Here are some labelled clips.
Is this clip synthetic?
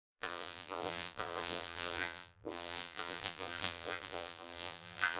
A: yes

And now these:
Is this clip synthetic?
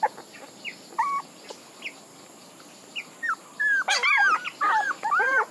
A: no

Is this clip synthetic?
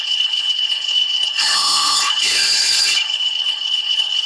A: yes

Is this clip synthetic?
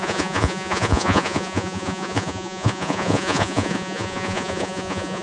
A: yes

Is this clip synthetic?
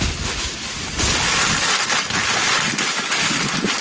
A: no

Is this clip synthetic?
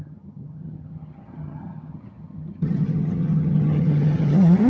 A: yes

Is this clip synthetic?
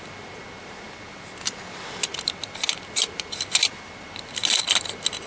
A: no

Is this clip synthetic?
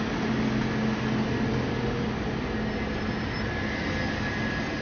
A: no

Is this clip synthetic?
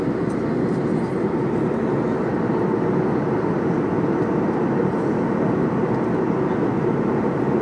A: no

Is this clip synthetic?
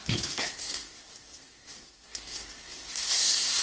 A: yes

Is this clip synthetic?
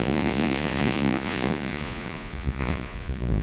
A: yes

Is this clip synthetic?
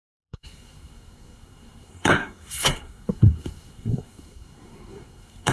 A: yes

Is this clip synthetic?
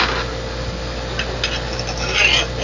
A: no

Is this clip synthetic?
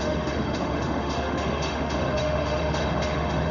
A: yes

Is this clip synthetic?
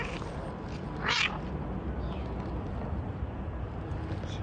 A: no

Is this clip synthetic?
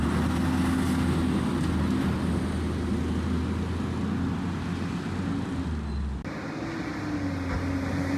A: no